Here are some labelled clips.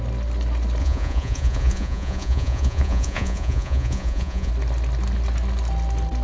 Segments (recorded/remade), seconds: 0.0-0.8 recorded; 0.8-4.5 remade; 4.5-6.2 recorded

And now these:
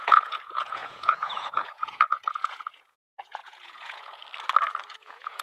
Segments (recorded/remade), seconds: 0.0-4.2 remade; 4.2-4.9 recorded; 4.9-5.4 remade

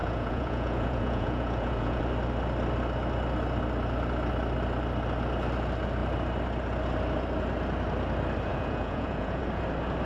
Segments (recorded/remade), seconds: 0.0-2.0 remade; 2.0-8.5 recorded; 8.5-9.4 remade; 9.4-10.1 recorded

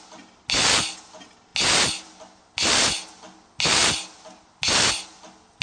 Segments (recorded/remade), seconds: 0.0-5.6 recorded